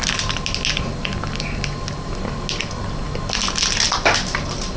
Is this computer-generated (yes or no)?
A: no